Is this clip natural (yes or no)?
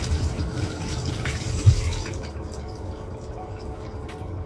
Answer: no